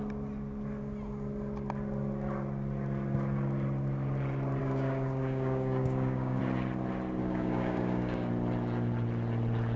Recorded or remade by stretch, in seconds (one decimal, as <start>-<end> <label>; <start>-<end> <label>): 0.0-4.6 recorded; 4.6-6.4 remade; 6.4-7.2 recorded; 7.2-8.3 remade; 8.3-9.8 recorded